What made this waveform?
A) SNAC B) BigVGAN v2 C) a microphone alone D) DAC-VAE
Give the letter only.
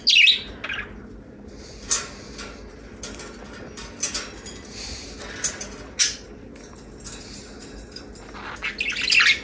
C